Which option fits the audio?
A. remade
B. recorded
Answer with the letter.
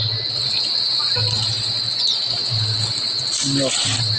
B